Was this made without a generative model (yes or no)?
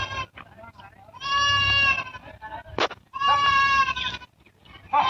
yes